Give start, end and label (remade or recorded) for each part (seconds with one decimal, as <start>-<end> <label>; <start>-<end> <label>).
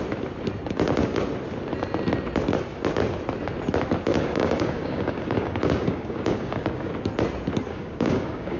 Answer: 0.0-4.1 recorded; 4.1-6.9 remade; 6.9-7.7 recorded; 7.7-8.6 remade